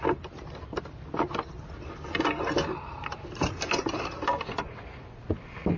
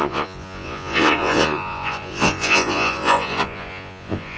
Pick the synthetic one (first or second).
second